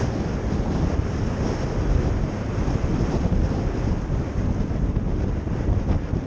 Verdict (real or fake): real